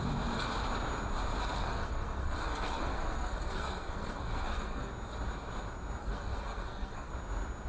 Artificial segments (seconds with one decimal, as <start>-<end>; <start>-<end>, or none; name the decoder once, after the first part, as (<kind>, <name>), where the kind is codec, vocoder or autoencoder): 1.6-4.9 (codec, SNAC); 6.0-7.1